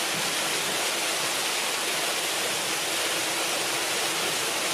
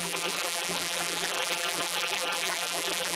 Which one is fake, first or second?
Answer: second